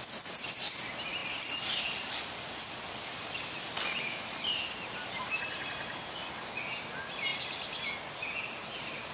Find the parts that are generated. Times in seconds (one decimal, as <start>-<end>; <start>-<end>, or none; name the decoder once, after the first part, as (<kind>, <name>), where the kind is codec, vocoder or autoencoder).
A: none